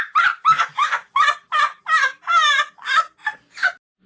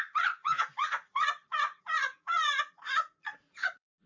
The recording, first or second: first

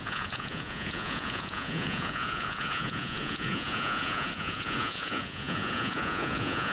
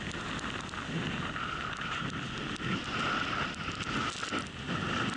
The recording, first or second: second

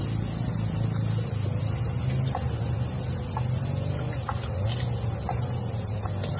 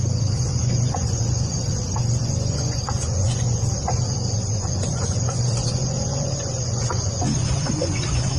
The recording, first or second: first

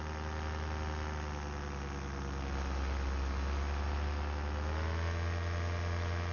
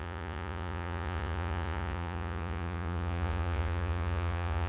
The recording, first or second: first